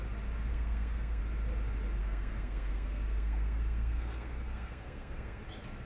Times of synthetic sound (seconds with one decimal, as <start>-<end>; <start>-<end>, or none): 0.5-1.2; 2.0-5.4